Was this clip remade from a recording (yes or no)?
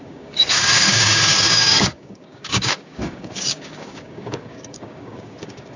yes